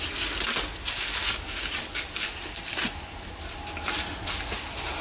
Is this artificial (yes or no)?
no